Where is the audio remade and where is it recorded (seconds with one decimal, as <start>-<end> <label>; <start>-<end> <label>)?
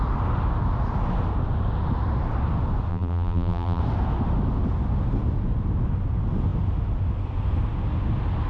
0.0-2.9 recorded; 2.9-3.8 remade; 3.8-8.5 recorded